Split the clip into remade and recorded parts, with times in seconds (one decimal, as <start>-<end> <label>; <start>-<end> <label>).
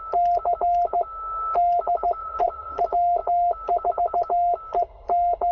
0.0-2.2 recorded; 2.2-2.8 remade; 2.8-5.5 recorded